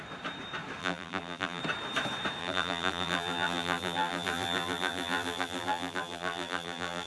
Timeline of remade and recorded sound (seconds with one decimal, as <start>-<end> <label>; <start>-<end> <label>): 0.0-0.8 recorded; 0.8-1.6 remade; 1.6-2.4 recorded; 2.4-7.1 remade